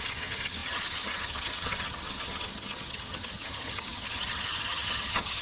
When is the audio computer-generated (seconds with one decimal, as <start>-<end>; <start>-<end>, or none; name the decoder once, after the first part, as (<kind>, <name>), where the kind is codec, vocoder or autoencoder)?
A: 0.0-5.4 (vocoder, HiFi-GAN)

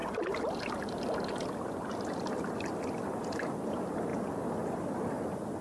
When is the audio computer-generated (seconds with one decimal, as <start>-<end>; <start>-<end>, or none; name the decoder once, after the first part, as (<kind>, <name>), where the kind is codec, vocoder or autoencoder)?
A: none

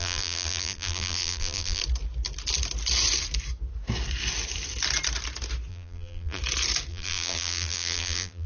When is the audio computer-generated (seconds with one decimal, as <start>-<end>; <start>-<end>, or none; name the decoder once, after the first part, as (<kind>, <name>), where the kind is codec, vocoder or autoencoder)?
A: 0.0-1.8 (vocoder, BigVGAN v2); 5.7-6.4; 6.9-8.5

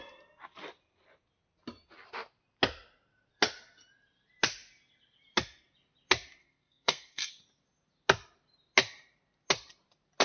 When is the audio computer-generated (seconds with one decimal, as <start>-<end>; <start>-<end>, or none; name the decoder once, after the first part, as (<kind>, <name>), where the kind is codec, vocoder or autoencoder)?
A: 6.4-7.3 (codec, SNAC)